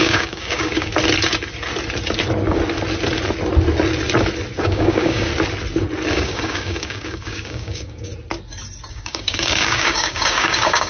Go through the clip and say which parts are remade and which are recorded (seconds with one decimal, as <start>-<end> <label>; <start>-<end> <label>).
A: 0.0-0.9 remade; 0.9-4.6 recorded; 4.6-5.3 remade; 5.3-6.1 recorded; 6.1-8.1 remade; 8.1-8.9 recorded; 8.9-10.9 remade